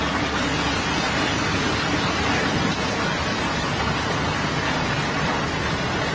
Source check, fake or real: real